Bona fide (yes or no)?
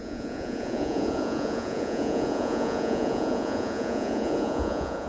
no